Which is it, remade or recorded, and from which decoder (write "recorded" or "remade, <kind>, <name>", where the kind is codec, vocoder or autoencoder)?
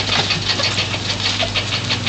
recorded